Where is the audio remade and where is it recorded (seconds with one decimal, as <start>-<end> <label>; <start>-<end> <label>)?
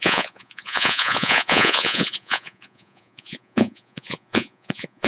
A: 0.0-5.1 remade